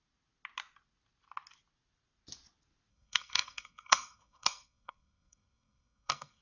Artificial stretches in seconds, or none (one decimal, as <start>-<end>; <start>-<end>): 2.9-6.4

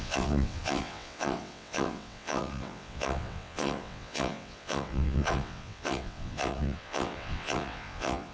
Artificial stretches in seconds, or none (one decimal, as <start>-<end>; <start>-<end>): 0.0-8.3

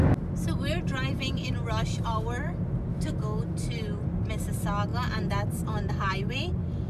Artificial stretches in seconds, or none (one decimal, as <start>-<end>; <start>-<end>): 2.9-3.4

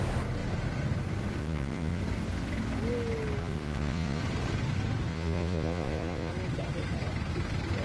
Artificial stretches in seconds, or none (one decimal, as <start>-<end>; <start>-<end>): 1.4-2.0; 3.4-4.2; 5.1-6.3

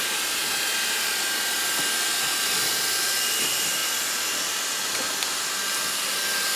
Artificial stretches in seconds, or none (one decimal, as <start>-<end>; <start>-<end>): none

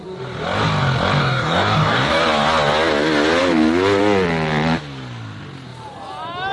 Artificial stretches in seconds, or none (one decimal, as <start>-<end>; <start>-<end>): 1.2-2.2

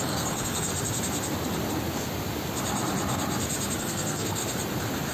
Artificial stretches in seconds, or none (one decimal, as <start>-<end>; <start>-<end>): 0.0-0.7; 3.8-4.4

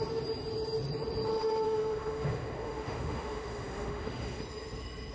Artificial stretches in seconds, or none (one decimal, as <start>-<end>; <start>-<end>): 1.3-4.4